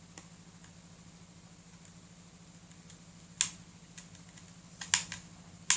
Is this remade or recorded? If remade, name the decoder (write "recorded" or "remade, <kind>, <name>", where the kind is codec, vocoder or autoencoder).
recorded